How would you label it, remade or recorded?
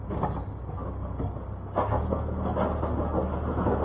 recorded